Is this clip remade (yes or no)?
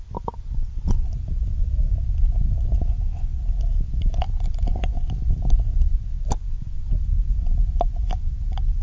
no